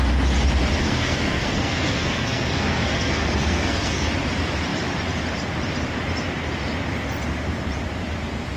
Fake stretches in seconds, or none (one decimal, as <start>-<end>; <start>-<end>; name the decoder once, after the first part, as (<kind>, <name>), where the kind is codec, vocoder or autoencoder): 0.8-4.1 (codec, SNAC)